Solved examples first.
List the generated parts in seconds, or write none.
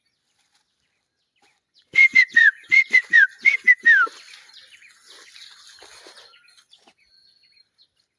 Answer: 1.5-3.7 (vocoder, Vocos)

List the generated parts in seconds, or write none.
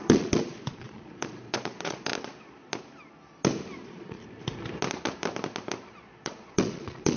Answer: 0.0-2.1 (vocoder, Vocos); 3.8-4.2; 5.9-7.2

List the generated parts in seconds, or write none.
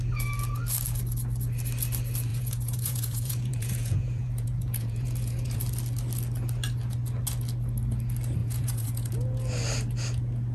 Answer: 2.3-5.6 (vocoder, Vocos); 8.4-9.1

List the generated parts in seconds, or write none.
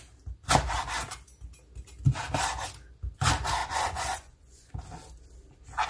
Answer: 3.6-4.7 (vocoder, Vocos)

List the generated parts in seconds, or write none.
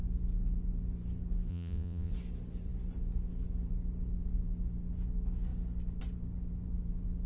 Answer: 1.5-2.1 (vocoder, Vocos)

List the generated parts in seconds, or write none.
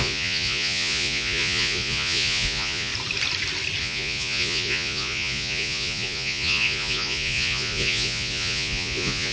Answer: 0.0-2.9 (vocoder, Vocos); 3.8-9.3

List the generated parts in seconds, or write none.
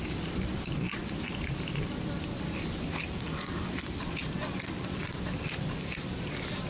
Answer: none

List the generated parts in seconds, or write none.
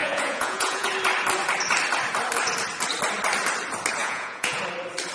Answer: 0.0-0.9 (vocoder, Vocos); 4.0-4.6